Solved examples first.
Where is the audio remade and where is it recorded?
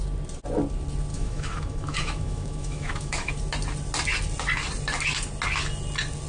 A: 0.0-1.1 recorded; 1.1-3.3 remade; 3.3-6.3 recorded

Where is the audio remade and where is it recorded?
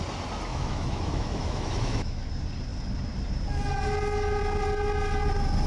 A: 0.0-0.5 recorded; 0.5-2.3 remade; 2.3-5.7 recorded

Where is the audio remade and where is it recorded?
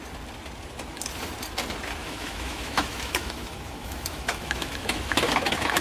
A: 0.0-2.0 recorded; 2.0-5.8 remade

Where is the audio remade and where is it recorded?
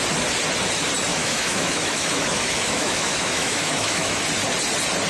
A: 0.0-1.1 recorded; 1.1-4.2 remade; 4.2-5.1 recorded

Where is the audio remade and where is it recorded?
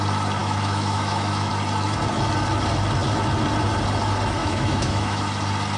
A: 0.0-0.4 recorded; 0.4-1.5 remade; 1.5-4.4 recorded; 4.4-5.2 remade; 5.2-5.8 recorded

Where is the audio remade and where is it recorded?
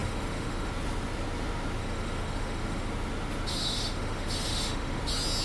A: 0.0-0.7 remade; 0.7-1.8 recorded; 1.8-2.9 remade; 2.9-3.5 recorded; 3.5-5.0 remade; 5.0-5.4 recorded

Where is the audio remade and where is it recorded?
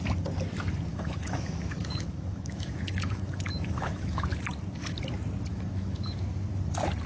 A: 0.0-0.9 recorded; 0.9-4.3 remade; 4.3-5.5 recorded; 5.5-6.2 remade; 6.2-7.1 recorded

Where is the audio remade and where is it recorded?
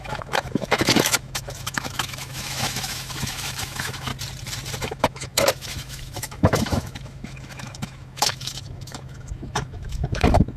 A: 0.0-4.1 remade; 4.1-4.8 recorded; 4.8-10.6 remade